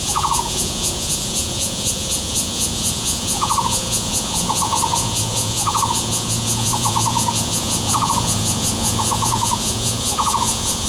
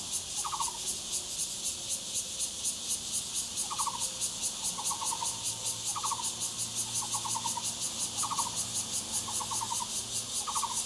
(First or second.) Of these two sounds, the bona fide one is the second